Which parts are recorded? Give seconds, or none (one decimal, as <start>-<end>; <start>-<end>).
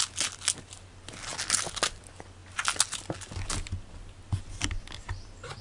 0.0-5.6